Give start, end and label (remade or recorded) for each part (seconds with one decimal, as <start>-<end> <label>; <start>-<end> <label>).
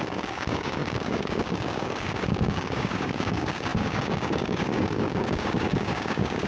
0.0-6.5 remade